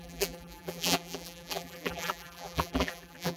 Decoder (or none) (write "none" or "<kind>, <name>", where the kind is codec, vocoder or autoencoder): vocoder, BigVGAN v2